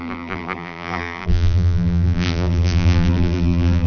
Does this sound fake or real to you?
fake